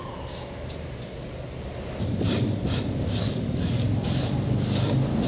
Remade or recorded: recorded